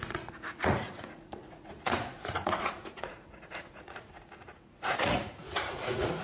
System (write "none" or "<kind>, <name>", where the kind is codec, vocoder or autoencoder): vocoder, Vocos